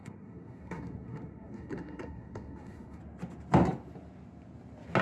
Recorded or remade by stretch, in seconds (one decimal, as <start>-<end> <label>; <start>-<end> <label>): 0.0-3.0 remade; 3.0-5.0 recorded